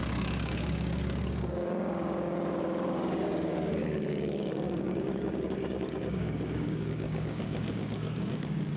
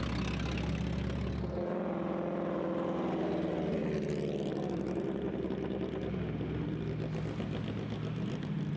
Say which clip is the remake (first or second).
first